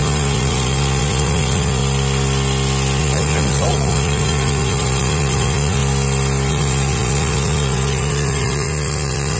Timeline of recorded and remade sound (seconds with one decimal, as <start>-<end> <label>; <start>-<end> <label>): 0.0-1.8 remade; 1.8-3.0 recorded; 3.0-5.8 remade; 5.8-6.5 recorded; 6.5-9.4 remade